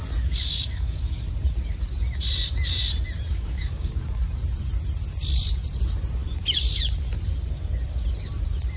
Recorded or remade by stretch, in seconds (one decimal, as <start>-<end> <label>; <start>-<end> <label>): 0.0-0.5 recorded; 0.5-1.0 remade; 1.0-3.3 recorded; 3.3-3.9 remade; 3.9-8.8 recorded